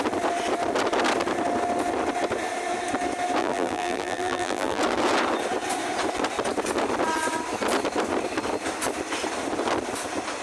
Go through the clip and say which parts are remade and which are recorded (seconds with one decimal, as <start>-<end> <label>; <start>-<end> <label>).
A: 0.0-3.4 recorded; 3.4-4.8 remade; 4.8-10.4 recorded

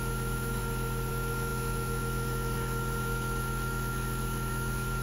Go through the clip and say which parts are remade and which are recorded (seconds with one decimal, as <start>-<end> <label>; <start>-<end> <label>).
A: 0.0-0.6 remade; 0.6-1.1 recorded; 1.1-5.0 remade

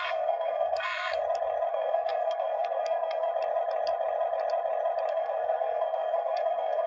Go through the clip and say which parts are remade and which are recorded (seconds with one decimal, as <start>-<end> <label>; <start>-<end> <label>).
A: 0.0-1.2 remade; 1.2-1.7 recorded; 1.7-3.3 remade; 3.3-5.1 recorded; 5.1-6.9 remade